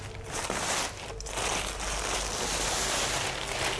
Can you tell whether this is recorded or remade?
recorded